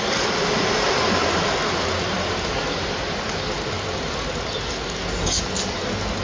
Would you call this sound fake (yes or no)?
no